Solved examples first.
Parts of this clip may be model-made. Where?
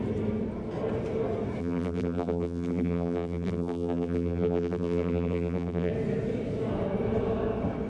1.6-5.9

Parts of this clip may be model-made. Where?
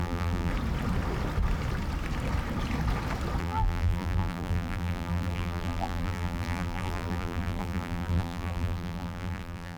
0.0-0.5; 3.4-9.8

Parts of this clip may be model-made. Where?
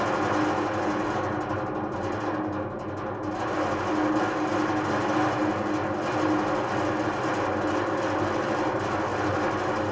none